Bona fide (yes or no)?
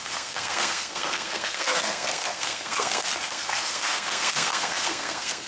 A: no